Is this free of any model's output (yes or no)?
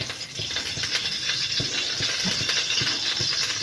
yes